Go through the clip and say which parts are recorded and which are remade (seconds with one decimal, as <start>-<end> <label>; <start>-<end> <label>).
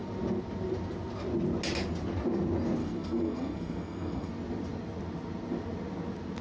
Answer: 0.0-2.8 recorded; 2.8-4.3 remade; 4.3-6.4 recorded